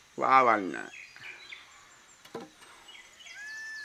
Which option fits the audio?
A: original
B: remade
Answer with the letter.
A